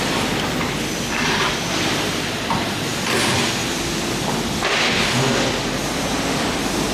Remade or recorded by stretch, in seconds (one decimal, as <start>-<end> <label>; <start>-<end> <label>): 0.0-6.9 recorded